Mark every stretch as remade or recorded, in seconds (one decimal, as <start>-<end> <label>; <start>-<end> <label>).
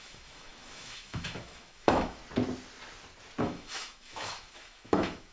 0.0-2.2 remade; 2.2-3.4 recorded; 3.4-5.3 remade